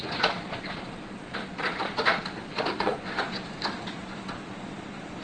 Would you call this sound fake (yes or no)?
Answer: yes